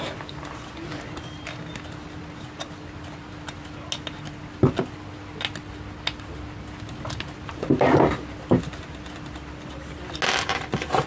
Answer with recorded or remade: recorded